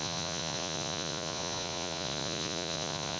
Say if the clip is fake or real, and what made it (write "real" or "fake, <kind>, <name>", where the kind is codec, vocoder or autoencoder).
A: fake, vocoder, Vocos